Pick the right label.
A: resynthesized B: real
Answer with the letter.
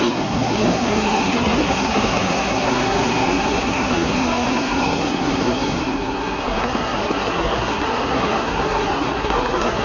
A